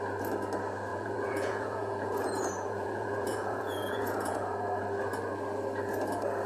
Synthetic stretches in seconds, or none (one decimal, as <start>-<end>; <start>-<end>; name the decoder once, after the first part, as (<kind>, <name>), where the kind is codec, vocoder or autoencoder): 0.9-4.8 (vocoder, Vocos)